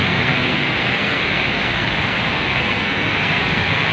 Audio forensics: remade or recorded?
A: remade